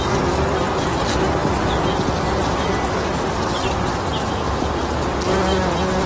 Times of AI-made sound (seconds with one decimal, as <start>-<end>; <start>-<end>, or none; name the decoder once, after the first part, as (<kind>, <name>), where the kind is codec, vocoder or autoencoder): 4.2-4.7 (autoencoder, DAC-VAE)